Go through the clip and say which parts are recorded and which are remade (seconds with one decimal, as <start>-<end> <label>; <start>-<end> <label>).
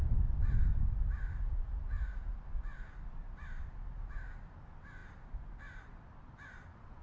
0.0-7.0 recorded